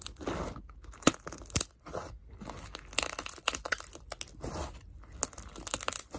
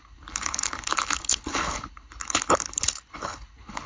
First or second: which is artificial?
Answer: second